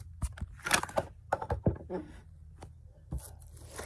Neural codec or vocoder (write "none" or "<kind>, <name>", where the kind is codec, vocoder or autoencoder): none